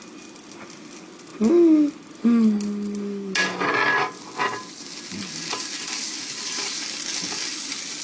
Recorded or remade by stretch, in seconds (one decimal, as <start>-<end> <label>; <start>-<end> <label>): 0.0-8.0 recorded